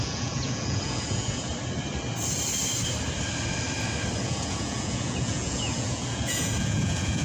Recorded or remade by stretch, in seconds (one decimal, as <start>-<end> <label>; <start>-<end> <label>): 0.0-1.5 remade; 1.5-4.2 recorded; 4.2-7.2 remade